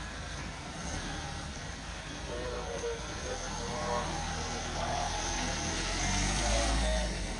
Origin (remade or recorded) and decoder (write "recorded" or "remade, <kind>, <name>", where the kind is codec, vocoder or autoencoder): remade, codec, SNAC